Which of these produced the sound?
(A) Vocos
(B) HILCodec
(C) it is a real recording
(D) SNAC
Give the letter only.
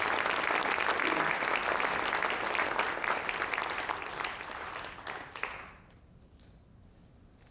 C